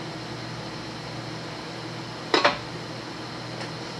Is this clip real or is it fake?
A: real